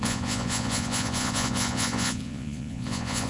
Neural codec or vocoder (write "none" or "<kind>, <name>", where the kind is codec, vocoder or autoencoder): vocoder, Vocos